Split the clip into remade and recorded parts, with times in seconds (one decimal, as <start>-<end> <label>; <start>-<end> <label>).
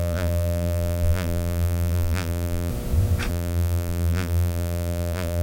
0.0-2.7 remade; 2.7-3.3 recorded; 3.3-5.4 remade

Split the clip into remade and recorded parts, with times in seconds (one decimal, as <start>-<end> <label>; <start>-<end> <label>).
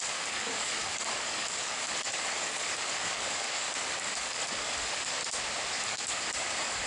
0.0-5.2 remade; 5.2-5.8 recorded; 5.8-6.9 remade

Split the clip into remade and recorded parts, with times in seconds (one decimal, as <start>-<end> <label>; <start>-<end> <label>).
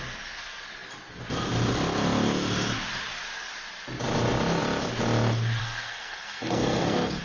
0.0-5.6 recorded; 5.6-7.2 remade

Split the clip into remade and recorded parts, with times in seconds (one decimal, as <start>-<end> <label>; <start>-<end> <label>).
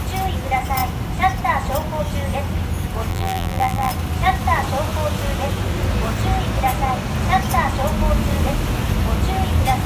0.0-3.1 recorded; 3.1-3.9 remade; 3.9-9.9 recorded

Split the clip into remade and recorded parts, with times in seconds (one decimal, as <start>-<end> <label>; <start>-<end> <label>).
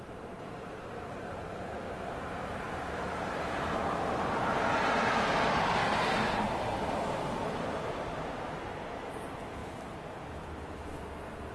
0.0-5.8 remade; 5.8-6.6 recorded; 6.6-9.6 remade; 9.6-11.5 recorded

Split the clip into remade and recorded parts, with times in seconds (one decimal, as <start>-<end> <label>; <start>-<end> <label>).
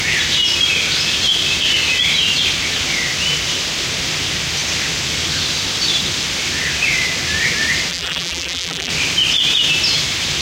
0.0-7.9 recorded; 7.9-8.9 remade; 8.9-10.4 recorded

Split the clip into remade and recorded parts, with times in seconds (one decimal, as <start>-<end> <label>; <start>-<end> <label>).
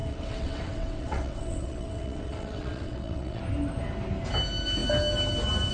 0.0-3.4 remade; 3.4-5.7 recorded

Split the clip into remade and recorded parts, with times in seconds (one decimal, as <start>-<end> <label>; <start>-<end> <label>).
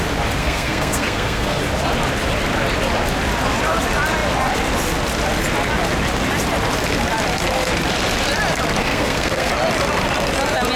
0.0-0.4 recorded; 0.4-1.6 remade; 1.6-8.8 recorded; 8.8-9.5 remade; 9.5-10.8 recorded